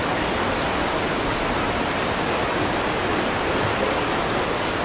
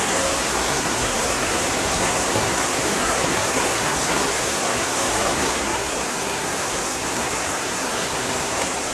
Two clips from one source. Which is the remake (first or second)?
second